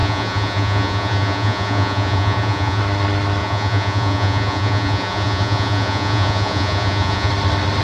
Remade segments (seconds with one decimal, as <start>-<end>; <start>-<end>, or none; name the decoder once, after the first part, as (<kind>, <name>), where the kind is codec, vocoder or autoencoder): 0.0-2.8 (vocoder, Vocos); 3.4-7.3